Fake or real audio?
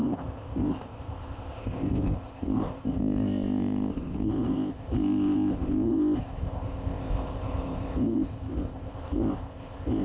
fake